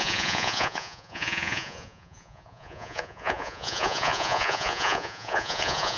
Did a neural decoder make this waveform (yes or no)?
yes